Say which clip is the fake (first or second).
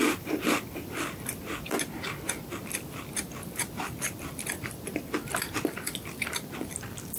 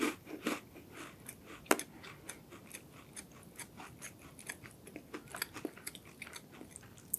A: first